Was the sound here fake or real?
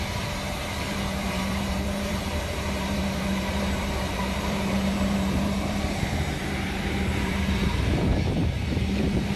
fake